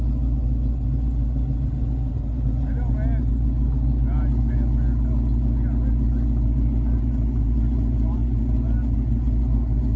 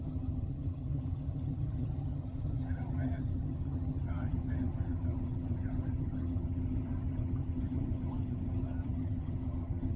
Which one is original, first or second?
first